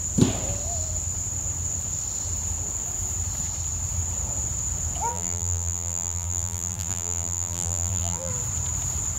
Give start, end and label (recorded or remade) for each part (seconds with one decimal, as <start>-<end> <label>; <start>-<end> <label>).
0.0-5.1 recorded; 5.1-8.3 remade; 8.3-9.2 recorded